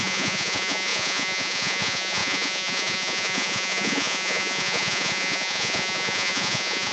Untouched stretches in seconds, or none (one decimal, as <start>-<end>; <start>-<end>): none